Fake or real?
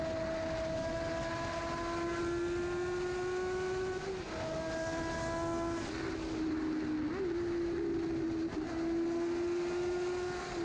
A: real